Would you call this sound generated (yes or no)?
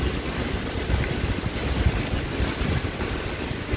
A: no